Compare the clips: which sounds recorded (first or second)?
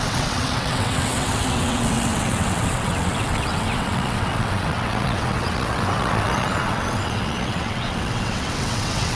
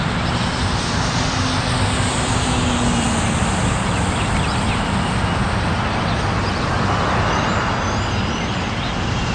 second